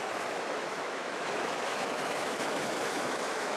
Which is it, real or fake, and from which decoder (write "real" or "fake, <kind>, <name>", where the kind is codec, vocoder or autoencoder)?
fake, autoencoder, DAC-VAE